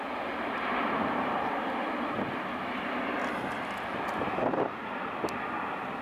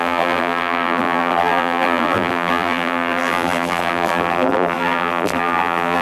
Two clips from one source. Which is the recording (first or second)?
first